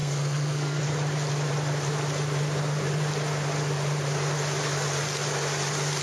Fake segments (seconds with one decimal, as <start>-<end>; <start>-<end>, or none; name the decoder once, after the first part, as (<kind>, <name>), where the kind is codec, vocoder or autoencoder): 0.0-0.8 (codec, SNAC)